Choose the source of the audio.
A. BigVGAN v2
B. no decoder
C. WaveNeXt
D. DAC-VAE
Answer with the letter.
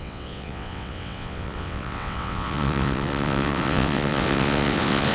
C